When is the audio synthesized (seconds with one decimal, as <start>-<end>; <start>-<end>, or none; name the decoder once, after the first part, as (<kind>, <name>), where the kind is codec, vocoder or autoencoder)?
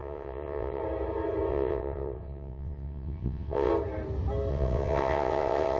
0.0-0.8 (vocoder, WaveNeXt); 1.5-3.7; 4.5-5.8